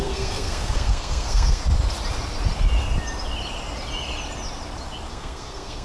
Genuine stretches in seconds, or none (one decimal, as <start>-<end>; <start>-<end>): 1.6-5.1